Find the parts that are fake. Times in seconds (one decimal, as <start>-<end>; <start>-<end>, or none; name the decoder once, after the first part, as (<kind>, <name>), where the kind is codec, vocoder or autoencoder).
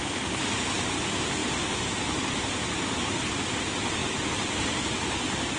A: none